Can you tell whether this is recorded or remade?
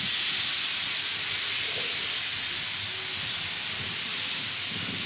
recorded